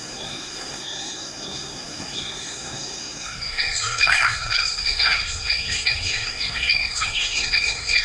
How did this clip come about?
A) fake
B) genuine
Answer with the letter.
A